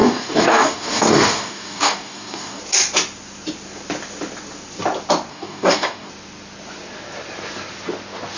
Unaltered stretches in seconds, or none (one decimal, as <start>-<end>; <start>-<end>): 2.6-5.3; 6.1-8.4